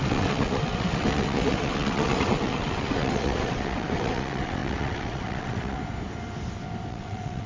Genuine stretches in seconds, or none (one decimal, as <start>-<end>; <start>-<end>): 5.8-6.9